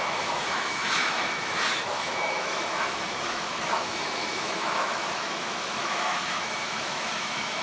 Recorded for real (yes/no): no